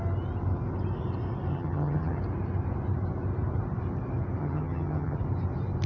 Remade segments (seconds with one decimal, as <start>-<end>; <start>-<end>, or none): 1.5-2.2; 4.4-5.2

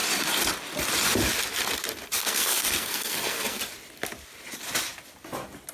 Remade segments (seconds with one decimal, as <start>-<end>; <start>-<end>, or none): 2.2-3.6

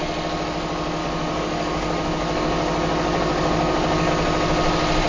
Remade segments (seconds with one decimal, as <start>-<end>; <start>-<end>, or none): 1.0-4.1

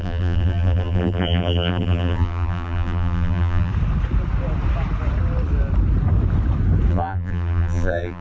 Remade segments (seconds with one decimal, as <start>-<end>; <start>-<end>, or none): 0.0-3.7; 6.9-8.2